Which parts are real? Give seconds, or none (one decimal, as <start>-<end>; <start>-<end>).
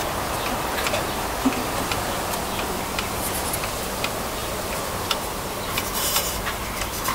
0.0-4.4; 6.3-7.1